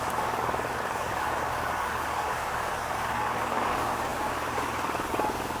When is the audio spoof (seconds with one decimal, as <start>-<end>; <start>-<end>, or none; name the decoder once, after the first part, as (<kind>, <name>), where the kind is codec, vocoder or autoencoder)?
0.0-5.6 (codec, DAC)